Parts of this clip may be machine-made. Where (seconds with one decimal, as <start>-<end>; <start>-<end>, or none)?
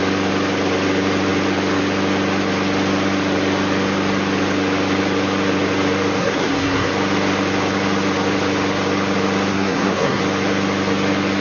6.2-6.9; 9.5-10.2